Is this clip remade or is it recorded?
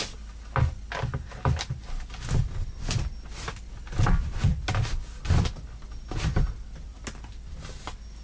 recorded